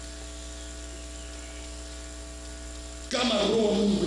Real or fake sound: real